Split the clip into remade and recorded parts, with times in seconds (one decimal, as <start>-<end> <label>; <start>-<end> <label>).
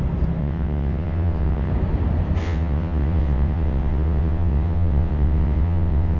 0.0-0.4 recorded; 0.4-1.7 remade; 1.7-2.4 recorded; 2.4-6.2 remade